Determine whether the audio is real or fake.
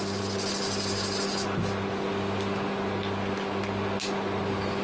real